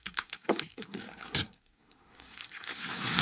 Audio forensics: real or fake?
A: fake